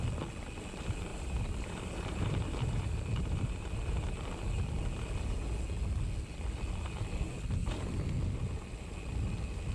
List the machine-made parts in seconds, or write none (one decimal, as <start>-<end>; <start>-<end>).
1.1-3.6